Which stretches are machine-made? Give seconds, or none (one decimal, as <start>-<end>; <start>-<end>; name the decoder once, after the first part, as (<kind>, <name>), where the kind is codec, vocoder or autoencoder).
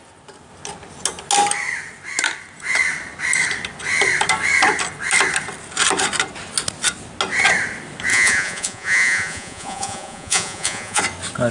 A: 8.1-11.0 (vocoder, Vocos)